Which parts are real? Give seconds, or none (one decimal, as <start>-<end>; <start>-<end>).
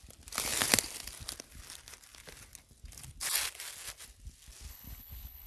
0.0-4.7